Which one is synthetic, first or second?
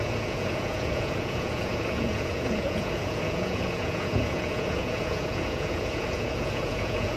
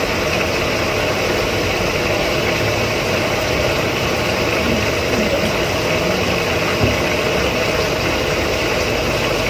first